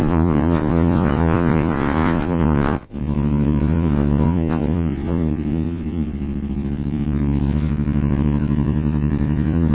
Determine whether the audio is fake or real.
fake